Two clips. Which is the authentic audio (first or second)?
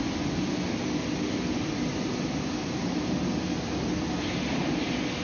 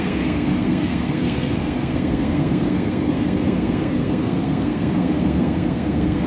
first